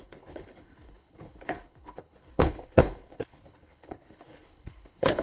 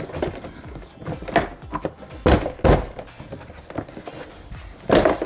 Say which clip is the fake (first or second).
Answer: first